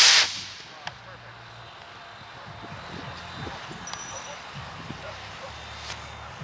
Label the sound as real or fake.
real